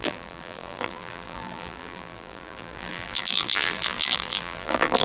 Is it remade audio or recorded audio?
remade